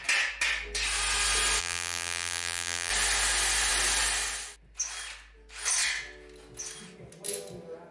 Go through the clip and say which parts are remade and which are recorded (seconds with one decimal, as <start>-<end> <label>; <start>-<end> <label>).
0.0-1.6 recorded; 1.6-2.9 remade; 2.9-7.9 recorded